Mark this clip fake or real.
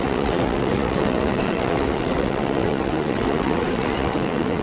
fake